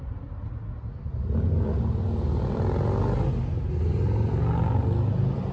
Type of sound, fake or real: real